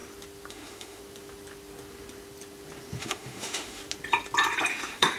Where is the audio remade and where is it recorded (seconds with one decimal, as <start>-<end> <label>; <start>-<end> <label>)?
0.0-0.5 recorded; 0.5-1.0 remade; 1.0-3.0 recorded; 3.0-3.8 remade; 3.8-4.7 recorded; 4.7-5.2 remade